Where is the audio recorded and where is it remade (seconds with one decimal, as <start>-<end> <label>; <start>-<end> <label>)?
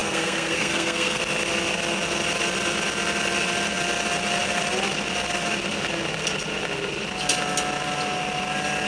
0.0-1.2 remade; 1.2-8.9 recorded